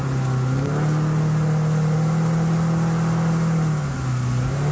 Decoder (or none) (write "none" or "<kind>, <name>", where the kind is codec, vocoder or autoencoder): none